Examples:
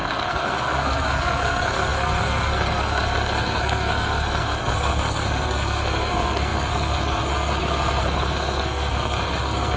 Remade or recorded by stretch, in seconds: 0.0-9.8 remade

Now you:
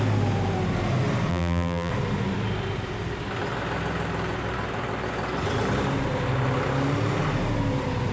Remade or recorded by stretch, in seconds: 0.0-1.3 recorded; 1.3-1.9 remade; 1.9-8.1 recorded